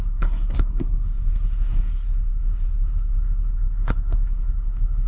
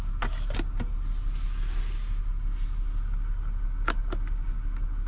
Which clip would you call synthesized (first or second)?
first